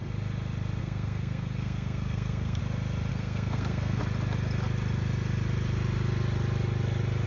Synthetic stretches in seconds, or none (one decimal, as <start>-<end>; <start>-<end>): 0.8-2.6; 3.1-4.0